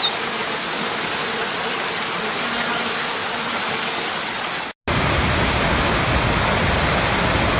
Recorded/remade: recorded